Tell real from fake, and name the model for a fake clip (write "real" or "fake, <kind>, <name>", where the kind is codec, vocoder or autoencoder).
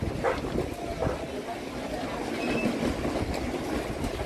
real